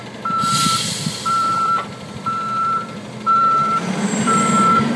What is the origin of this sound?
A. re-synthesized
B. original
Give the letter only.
A